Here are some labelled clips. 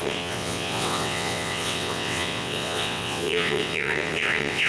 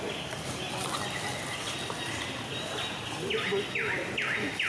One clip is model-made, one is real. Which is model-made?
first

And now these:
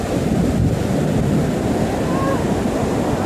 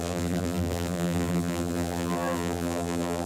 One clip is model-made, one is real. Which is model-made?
second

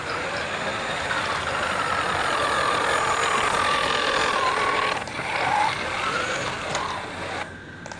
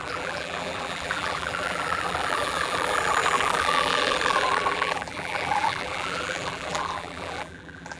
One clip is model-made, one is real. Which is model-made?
second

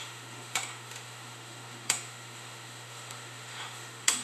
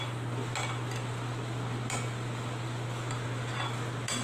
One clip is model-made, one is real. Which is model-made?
first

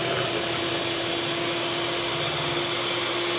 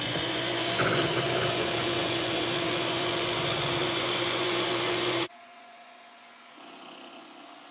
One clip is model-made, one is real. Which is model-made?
second